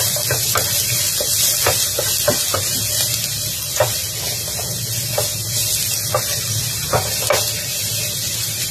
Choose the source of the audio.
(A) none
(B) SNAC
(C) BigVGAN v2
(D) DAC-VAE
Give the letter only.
A